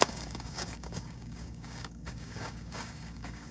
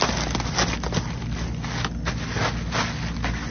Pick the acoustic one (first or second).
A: second